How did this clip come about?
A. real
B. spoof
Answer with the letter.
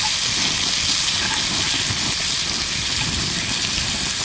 A